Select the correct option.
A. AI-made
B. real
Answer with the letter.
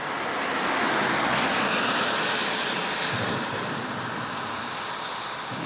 B